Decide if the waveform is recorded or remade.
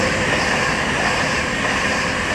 recorded